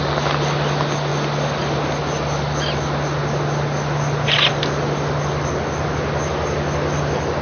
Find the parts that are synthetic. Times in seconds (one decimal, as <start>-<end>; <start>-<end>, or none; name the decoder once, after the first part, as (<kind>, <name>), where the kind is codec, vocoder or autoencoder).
none